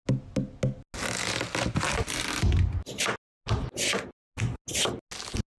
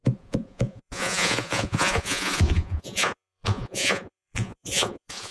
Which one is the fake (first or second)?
second